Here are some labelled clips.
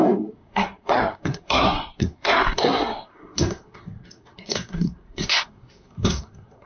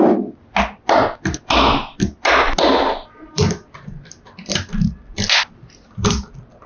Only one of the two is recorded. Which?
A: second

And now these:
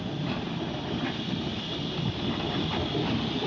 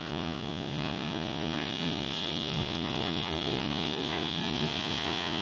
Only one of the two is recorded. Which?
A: first